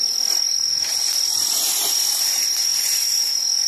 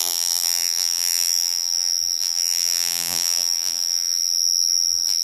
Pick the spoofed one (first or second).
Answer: second